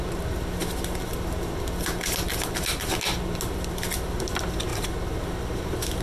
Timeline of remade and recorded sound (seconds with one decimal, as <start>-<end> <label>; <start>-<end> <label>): 0.0-6.0 recorded